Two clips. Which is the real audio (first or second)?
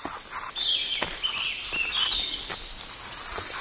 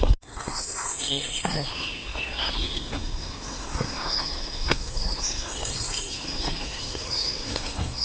first